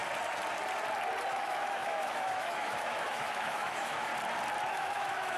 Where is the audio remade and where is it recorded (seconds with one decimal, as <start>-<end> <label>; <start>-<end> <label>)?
0.0-1.3 recorded; 1.3-4.1 remade; 4.1-4.7 recorded; 4.7-5.4 remade